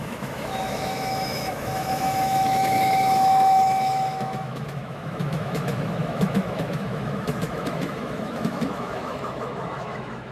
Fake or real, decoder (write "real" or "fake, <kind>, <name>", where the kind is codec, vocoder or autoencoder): fake, autoencoder, DAC-VAE